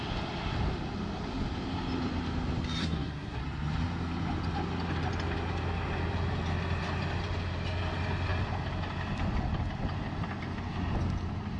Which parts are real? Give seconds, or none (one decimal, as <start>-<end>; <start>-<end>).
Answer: 0.0-2.8; 3.4-11.6